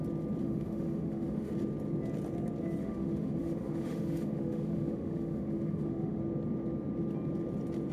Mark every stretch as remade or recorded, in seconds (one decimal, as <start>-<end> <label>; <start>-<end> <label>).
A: 0.0-0.4 recorded; 0.4-1.5 remade; 1.5-2.8 recorded; 2.8-6.2 remade; 6.2-7.9 recorded